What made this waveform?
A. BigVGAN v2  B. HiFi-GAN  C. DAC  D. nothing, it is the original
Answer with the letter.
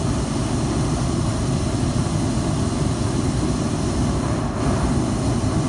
D